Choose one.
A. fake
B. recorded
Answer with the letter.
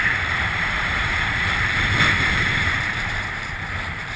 A